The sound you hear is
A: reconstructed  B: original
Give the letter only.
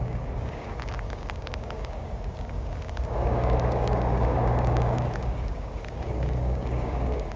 A